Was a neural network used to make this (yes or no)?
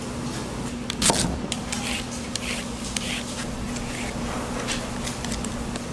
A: no